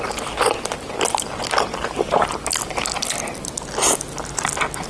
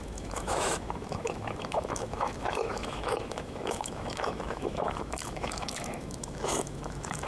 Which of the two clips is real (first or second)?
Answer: first